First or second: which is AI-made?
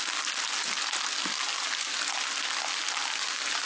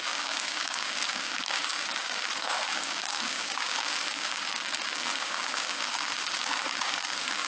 second